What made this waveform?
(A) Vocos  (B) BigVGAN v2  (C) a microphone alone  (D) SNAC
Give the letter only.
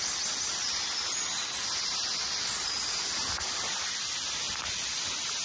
C